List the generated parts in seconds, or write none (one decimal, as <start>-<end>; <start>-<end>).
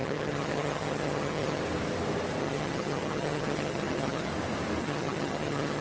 0.0-1.6; 2.4-4.3; 4.8-5.8